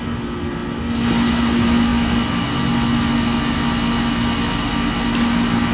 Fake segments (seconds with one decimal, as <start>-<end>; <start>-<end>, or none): none